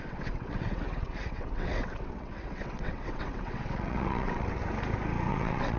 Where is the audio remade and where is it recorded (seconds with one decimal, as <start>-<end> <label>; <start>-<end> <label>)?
0.0-4.6 remade; 4.6-5.3 recorded; 5.3-5.8 remade